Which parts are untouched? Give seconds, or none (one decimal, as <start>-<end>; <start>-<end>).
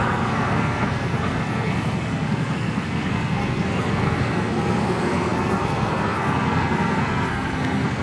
none